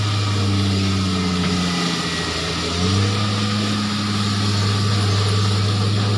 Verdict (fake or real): real